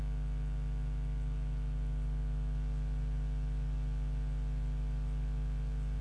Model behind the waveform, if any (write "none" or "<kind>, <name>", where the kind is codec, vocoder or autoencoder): none